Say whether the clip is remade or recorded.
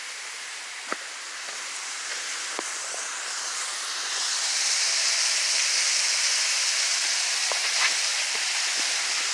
recorded